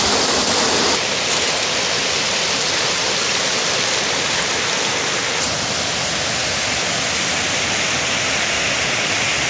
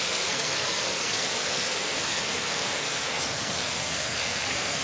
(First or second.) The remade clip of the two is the second